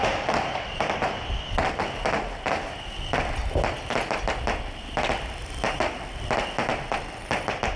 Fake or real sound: real